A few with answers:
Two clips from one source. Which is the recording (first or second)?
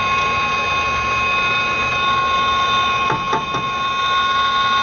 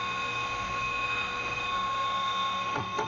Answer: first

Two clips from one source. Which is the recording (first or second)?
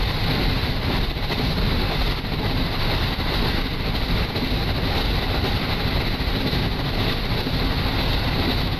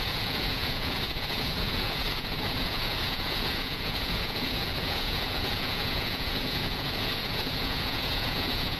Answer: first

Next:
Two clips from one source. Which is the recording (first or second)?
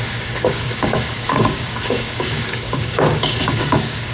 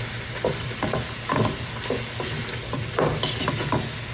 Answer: second